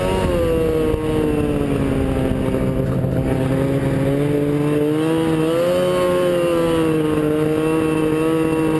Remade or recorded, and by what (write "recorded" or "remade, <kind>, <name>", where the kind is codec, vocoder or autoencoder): recorded